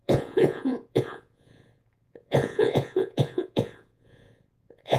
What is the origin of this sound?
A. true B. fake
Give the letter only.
B